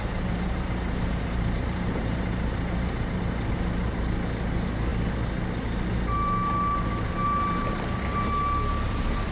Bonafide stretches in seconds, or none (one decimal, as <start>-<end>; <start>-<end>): 3.2-9.3